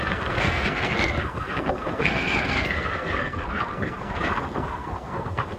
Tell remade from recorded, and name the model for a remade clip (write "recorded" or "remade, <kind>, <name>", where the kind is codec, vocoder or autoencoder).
remade, codec, SNAC